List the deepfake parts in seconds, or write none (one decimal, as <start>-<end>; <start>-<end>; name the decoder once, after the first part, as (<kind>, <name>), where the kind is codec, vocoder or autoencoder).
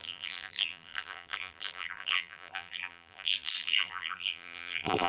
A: 0.0-5.1 (vocoder, BigVGAN v2)